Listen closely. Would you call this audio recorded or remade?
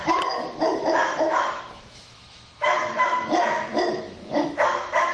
remade